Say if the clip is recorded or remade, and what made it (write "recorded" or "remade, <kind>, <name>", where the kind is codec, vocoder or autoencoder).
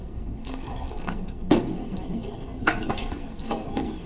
remade, codec, SNAC